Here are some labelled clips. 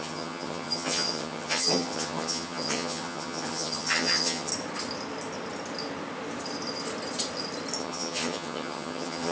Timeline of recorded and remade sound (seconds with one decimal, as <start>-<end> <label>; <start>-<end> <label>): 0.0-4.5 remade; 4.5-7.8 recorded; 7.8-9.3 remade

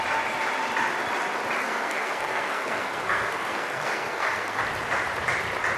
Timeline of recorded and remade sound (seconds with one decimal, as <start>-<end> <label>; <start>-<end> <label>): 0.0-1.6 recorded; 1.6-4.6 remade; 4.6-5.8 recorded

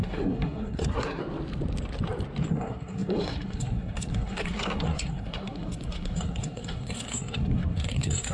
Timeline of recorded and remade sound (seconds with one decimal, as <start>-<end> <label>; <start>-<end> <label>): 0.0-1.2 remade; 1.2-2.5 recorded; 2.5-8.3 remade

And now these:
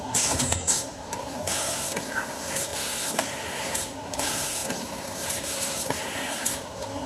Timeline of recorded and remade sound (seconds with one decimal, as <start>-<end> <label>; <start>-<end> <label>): 0.0-7.1 remade

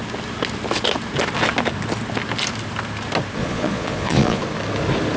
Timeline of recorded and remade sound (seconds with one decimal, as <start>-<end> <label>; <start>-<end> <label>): 0.0-3.4 recorded; 3.4-4.4 remade; 4.4-5.2 recorded

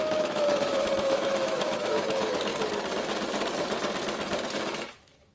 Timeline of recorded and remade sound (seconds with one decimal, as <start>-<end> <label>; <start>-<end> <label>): 0.0-2.5 remade; 2.5-4.5 recorded; 4.5-5.3 remade